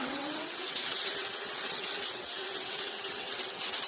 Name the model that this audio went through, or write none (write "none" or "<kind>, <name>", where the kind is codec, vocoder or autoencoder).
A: vocoder, WaveNeXt